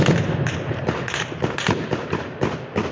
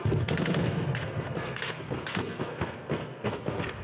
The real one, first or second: first